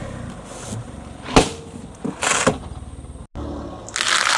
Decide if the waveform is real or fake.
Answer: real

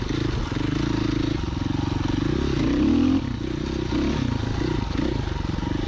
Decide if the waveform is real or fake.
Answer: real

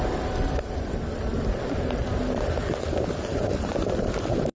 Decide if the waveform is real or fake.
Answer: fake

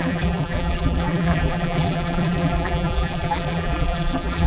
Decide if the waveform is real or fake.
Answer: fake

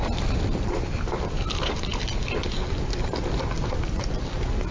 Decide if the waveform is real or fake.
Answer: real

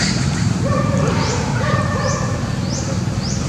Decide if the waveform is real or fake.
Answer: fake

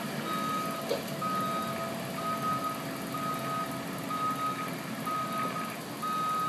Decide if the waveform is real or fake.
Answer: real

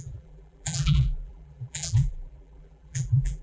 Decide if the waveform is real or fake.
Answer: fake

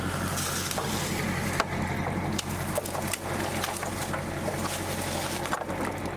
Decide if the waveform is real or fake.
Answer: real